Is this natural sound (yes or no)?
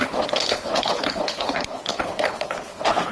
no